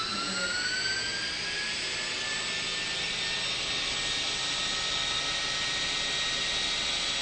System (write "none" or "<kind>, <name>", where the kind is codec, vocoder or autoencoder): none